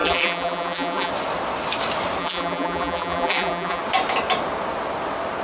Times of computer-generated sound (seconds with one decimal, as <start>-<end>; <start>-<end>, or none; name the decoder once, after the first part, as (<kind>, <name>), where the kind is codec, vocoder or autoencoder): 0.0-1.1 (vocoder, BigVGAN v2); 2.2-3.8